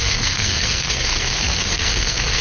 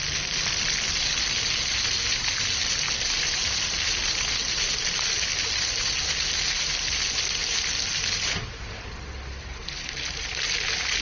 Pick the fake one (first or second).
first